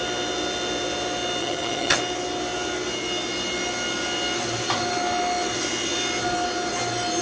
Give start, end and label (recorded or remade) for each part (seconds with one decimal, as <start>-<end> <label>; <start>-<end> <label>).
0.0-1.4 recorded; 1.4-2.0 remade; 2.0-7.2 recorded